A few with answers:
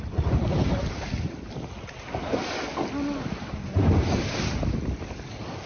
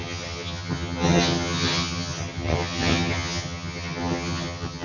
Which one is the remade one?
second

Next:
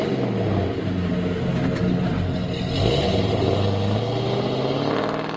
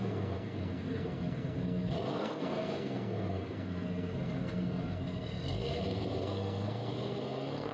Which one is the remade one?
second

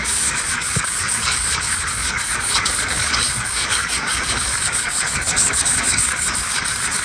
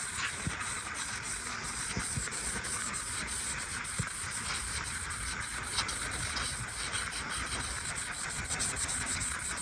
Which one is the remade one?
first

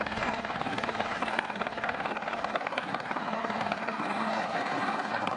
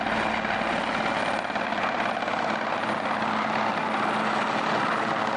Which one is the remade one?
first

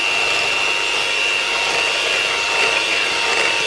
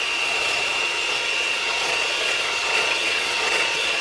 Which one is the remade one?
second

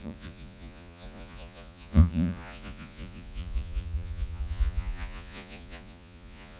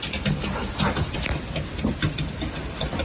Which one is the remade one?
first